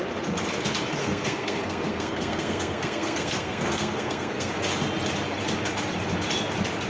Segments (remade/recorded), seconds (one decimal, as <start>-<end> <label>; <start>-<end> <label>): 0.0-1.0 recorded; 1.0-4.5 remade; 4.5-6.9 recorded